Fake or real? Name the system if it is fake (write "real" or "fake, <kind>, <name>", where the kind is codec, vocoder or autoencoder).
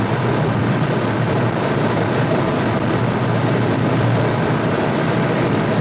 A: fake, vocoder, BigVGAN v2